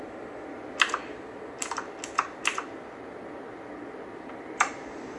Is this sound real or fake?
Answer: real